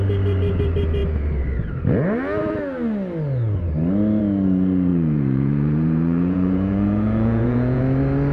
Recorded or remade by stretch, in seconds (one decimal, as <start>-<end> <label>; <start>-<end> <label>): 0.0-4.9 recorded; 4.9-7.8 remade; 7.8-8.3 recorded